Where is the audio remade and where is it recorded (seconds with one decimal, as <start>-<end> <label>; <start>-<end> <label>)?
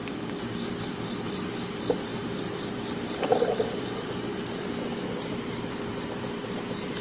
0.0-0.8 recorded; 0.8-7.0 remade